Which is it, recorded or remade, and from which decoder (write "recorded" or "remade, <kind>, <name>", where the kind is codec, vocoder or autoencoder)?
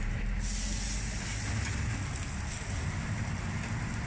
recorded